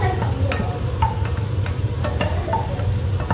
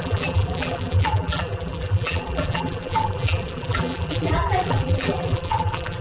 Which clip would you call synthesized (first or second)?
second